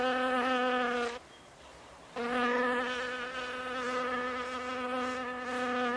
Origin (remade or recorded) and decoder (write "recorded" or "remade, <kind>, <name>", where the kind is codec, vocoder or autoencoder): recorded